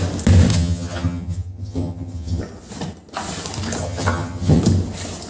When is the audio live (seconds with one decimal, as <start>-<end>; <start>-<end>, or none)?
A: 0.0-0.5; 2.4-3.8; 4.6-5.3